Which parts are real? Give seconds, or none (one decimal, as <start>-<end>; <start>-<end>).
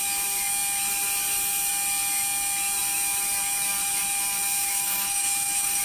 0.0-4.6